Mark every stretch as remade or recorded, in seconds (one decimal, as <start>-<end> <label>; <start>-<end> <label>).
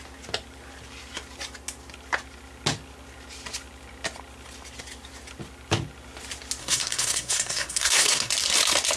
0.0-6.6 recorded; 6.6-8.3 remade; 8.3-9.0 recorded